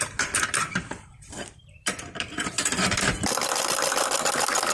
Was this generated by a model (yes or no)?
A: yes